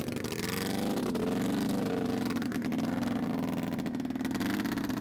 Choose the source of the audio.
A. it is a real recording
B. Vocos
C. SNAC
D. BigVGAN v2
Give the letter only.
A